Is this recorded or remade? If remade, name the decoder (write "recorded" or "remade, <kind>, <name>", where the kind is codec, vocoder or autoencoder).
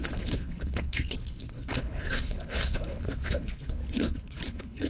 remade, codec, HILCodec